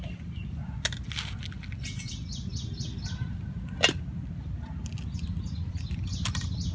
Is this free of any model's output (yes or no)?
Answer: yes